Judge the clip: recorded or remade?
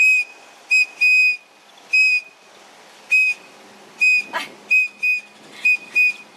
recorded